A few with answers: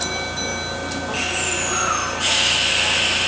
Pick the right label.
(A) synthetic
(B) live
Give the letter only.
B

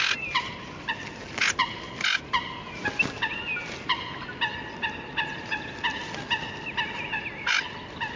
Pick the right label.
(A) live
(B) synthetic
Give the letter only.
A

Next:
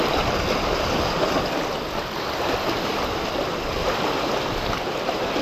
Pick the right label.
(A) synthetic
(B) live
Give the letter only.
B